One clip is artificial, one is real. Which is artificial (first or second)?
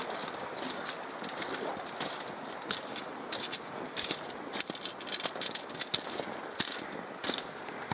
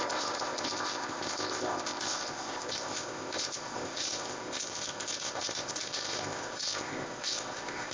second